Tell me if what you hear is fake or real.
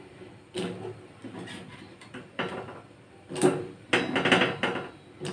real